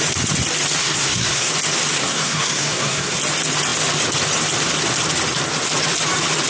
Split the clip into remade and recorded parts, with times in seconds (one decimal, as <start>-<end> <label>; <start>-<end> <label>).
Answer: 0.0-0.8 recorded; 0.8-1.5 remade; 1.5-2.0 recorded; 2.0-3.2 remade; 3.2-6.5 recorded